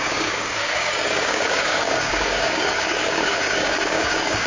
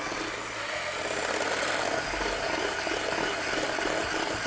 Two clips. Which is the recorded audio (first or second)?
second